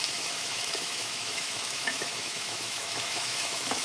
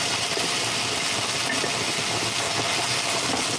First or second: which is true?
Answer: second